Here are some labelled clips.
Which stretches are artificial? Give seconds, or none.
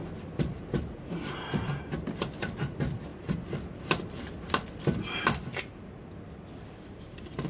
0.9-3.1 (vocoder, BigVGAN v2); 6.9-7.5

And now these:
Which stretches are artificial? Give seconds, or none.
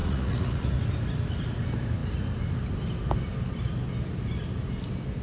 0.0-0.8 (vocoder, Vocos)